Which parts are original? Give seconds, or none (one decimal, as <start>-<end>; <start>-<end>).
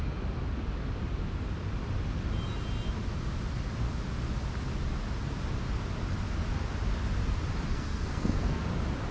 0.0-7.7; 8.6-9.1